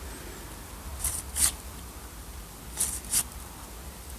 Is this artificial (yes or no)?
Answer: no